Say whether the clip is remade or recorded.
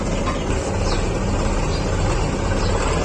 recorded